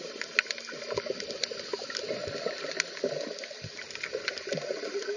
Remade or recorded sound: recorded